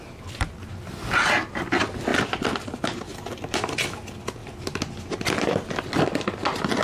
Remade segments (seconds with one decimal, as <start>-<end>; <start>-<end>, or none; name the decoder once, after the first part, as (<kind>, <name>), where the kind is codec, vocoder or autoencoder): 2.1-3.0 (vocoder, BigVGAN v2)